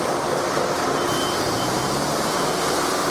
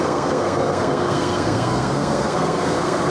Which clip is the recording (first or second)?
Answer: first